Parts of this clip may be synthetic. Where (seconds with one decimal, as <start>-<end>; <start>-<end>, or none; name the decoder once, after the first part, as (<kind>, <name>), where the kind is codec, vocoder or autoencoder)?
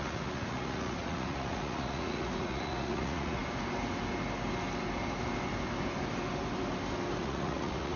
0.0-3.4 (vocoder, Vocos); 7.2-8.0